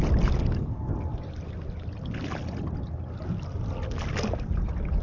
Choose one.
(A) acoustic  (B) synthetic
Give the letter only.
A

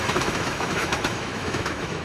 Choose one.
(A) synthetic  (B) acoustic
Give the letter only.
A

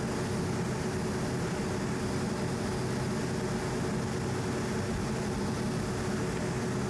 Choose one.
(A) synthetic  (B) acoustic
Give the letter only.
B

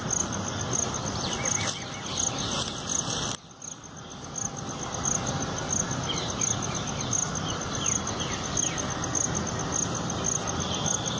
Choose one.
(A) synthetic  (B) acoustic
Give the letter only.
B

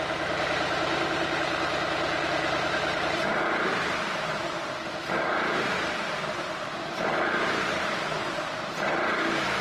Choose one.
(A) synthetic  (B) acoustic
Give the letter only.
A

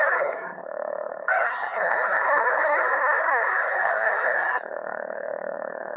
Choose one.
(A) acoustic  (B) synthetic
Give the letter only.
B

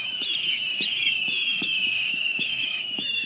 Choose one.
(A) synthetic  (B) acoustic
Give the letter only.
A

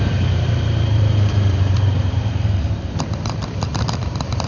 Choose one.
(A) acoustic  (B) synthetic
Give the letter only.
B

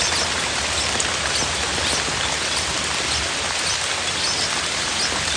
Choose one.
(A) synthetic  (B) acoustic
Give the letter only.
B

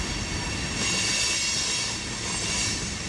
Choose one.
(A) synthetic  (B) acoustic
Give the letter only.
B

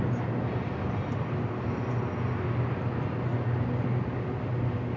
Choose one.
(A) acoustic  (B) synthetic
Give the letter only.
A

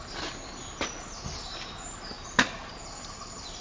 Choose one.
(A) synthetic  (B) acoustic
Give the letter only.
B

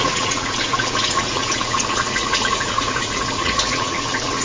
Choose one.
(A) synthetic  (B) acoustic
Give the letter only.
A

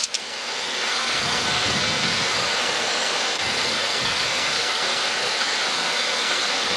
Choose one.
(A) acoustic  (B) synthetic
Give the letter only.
B